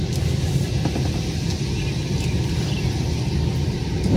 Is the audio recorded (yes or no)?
yes